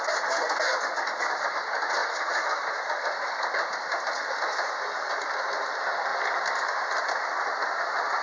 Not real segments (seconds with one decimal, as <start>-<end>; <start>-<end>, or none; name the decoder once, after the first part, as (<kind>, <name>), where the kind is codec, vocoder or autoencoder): 2.0-2.6 (autoencoder, DAC-VAE)